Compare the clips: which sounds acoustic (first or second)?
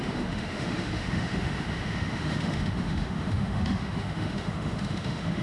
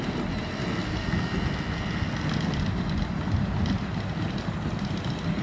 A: second